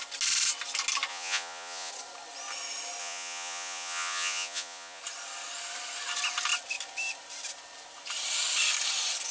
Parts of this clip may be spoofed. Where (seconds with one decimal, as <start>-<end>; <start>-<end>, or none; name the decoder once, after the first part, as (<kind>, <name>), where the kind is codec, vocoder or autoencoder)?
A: 1.1-1.9 (vocoder, Vocos); 3.0-5.0